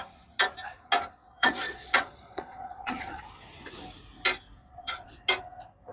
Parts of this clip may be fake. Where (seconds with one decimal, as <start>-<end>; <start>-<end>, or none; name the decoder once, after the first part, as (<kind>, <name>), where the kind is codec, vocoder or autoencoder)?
1.2-3.2 (vocoder, Vocos); 4.6-5.2